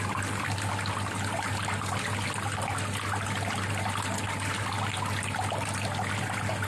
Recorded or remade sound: recorded